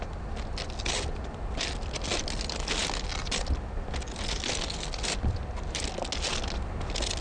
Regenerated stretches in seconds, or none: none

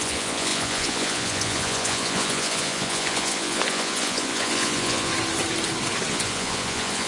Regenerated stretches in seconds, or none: 0.0-5.1 (vocoder, Vocos); 6.1-7.1

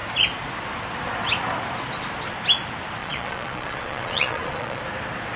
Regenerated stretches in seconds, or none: 3.0-4.8 (vocoder, Vocos)

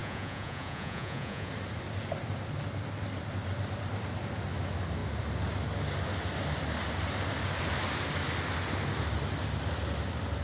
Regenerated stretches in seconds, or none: 0.0-1.5 (vocoder, Vocos)